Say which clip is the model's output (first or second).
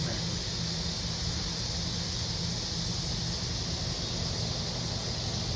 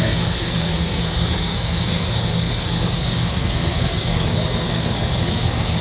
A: second